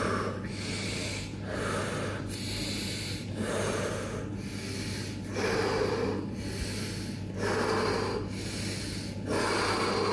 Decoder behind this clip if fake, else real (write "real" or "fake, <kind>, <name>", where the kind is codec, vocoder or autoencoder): real